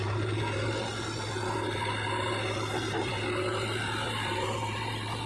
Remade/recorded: recorded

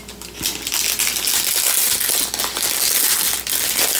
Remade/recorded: recorded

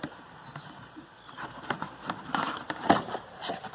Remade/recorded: recorded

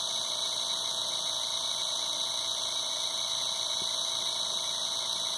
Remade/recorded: recorded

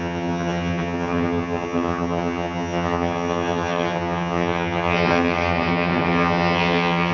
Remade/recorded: remade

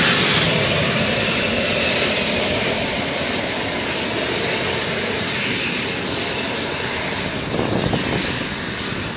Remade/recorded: recorded